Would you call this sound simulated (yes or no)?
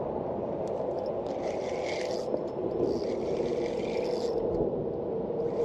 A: no